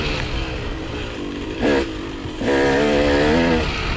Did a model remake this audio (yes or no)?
no